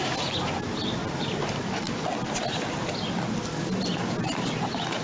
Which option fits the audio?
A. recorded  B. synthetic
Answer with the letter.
A